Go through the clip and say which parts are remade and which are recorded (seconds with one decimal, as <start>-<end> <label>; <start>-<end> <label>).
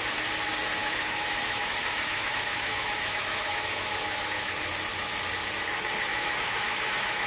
0.0-0.8 recorded; 0.8-4.5 remade; 4.5-6.1 recorded; 6.1-7.3 remade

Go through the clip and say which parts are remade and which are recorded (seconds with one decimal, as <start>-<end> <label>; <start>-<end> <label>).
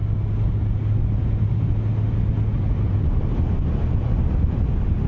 0.0-5.1 recorded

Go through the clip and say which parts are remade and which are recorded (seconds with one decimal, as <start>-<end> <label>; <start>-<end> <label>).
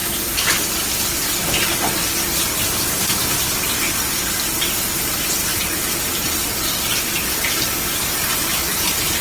0.0-9.2 recorded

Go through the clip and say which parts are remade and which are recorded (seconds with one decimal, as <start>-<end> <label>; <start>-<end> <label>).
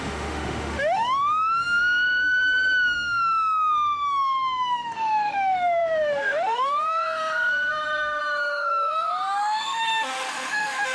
0.0-10.9 remade